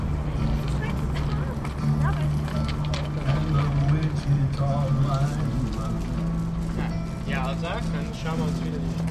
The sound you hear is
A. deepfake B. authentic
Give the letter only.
B